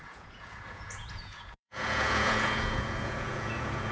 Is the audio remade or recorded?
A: remade